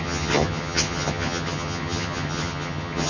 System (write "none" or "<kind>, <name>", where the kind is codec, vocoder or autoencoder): vocoder, HiFi-GAN